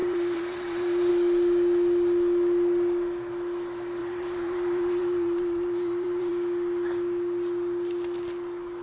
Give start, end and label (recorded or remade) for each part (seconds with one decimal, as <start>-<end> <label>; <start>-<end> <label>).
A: 0.0-1.1 remade; 1.1-4.0 recorded; 4.0-6.3 remade; 6.3-8.8 recorded